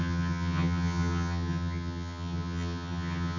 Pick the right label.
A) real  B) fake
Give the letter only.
B